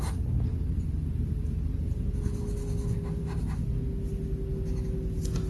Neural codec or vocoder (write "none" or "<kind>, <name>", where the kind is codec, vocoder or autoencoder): none